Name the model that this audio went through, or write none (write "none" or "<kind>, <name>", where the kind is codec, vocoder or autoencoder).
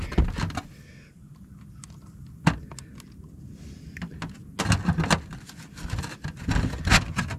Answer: none